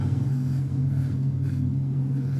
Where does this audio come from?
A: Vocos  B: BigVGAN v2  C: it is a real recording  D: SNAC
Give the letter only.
D